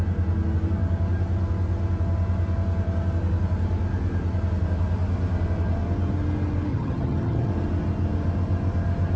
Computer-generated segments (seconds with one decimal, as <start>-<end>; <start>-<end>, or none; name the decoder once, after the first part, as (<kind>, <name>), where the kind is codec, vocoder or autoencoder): 6.7-7.5 (vocoder, HiFi-GAN)